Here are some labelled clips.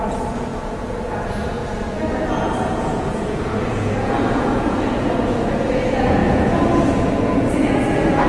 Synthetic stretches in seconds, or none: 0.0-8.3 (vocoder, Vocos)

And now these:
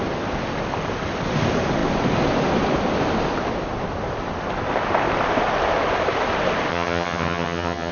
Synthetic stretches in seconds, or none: 6.7-7.9 (vocoder, HiFi-GAN)

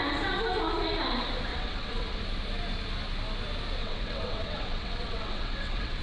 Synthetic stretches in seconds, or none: 1.5-2.2 (vocoder, WaveNeXt); 3.8-6.0